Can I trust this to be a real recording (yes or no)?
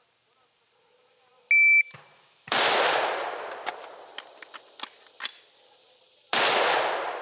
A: yes